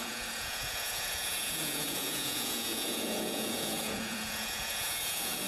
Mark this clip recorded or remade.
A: remade